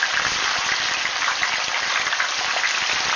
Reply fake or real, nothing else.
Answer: fake